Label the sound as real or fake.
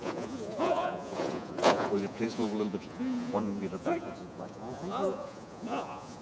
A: fake